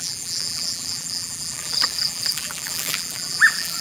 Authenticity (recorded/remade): remade